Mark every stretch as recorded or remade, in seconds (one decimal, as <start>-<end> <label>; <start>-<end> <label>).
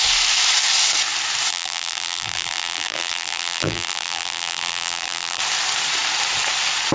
0.0-1.5 recorded; 1.5-5.4 remade; 5.4-6.9 recorded